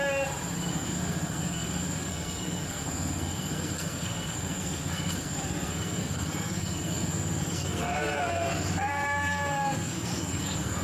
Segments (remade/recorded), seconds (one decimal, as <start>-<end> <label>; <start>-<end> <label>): 0.0-0.7 recorded; 0.7-10.8 remade